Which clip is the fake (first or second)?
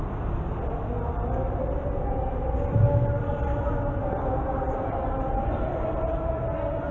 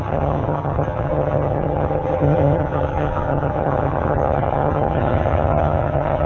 second